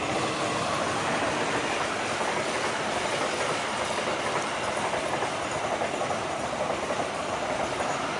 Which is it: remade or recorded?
remade